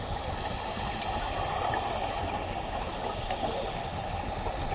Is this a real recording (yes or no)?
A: yes